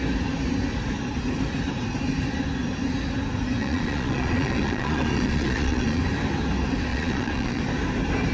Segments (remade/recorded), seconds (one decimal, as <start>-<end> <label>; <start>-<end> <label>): 0.0-3.6 recorded; 3.6-6.0 remade; 6.0-6.9 recorded; 6.9-7.6 remade; 7.6-8.3 recorded